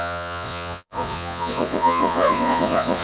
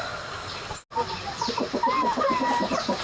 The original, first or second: second